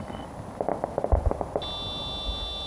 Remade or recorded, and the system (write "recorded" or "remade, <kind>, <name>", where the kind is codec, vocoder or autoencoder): recorded